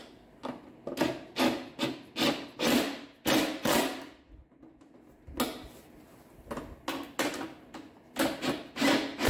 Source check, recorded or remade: recorded